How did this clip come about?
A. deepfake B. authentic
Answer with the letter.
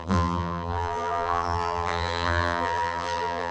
A